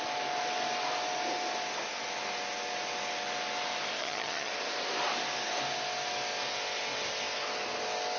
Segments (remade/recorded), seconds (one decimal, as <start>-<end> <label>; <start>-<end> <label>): 0.0-4.0 recorded; 4.0-4.5 remade; 4.5-8.2 recorded